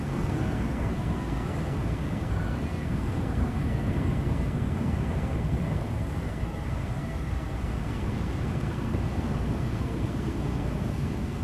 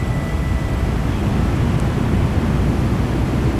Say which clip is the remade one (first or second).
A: first